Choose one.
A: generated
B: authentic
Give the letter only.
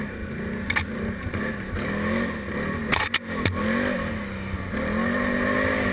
B